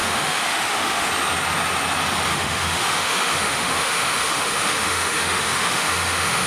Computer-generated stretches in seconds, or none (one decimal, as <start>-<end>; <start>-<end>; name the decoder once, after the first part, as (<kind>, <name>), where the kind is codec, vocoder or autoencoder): 0.0-1.1 (autoencoder, DAC-VAE); 2.3-6.5